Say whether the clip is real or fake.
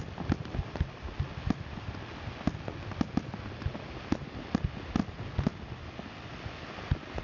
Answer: real